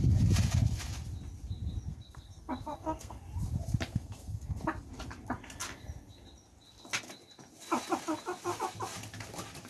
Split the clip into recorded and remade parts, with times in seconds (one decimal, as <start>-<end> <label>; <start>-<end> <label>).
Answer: 0.0-1.9 recorded; 1.9-3.2 remade; 3.2-3.9 recorded; 3.9-4.6 remade; 4.6-9.7 recorded

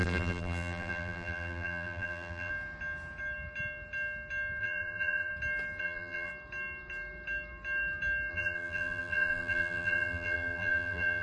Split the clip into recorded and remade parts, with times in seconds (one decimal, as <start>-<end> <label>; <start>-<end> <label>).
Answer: 0.0-2.5 remade; 2.5-4.6 recorded; 4.6-5.3 remade; 5.3-5.8 recorded; 5.8-6.3 remade; 6.3-8.3 recorded; 8.3-11.2 remade

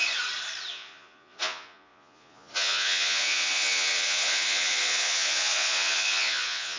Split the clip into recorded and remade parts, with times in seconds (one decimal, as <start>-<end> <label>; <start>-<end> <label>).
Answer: 0.0-0.7 recorded; 0.7-6.8 remade

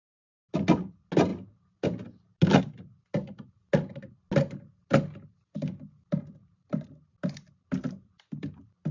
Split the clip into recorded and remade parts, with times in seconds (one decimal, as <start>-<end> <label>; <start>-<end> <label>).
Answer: 0.0-6.4 recorded; 6.4-7.2 remade; 7.2-8.9 recorded